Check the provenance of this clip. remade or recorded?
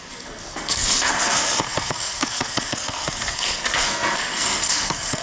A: remade